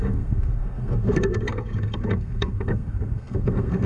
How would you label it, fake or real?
fake